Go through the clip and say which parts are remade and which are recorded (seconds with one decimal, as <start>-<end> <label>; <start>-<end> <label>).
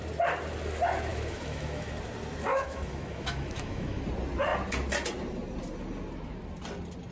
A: 0.0-1.1 recorded; 1.1-1.9 remade; 1.9-2.5 recorded; 2.5-4.0 remade; 4.0-7.1 recorded